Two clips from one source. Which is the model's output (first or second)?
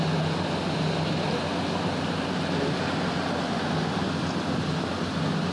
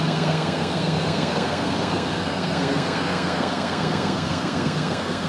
second